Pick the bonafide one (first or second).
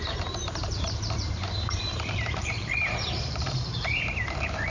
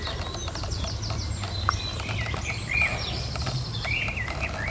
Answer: second